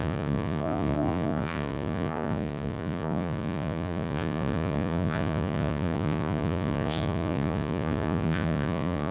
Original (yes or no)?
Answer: no